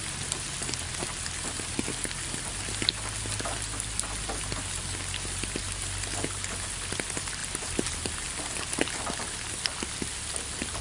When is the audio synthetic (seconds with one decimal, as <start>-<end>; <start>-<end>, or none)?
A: none